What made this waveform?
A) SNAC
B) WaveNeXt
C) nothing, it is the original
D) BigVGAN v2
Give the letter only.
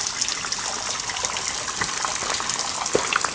C